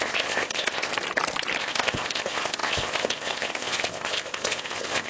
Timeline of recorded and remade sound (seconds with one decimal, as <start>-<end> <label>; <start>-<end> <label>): 0.0-0.9 remade; 0.9-1.6 recorded; 1.6-5.1 remade